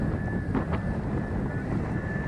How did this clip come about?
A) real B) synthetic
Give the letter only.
A